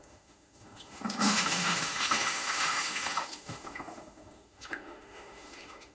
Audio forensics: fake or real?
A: fake